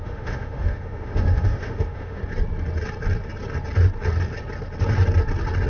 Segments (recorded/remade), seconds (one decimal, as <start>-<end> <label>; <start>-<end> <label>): 0.0-2.2 remade; 2.2-5.7 recorded